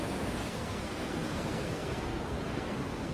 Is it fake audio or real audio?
fake